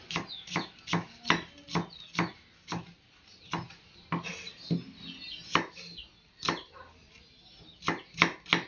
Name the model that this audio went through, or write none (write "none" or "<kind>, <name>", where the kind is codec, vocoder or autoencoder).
none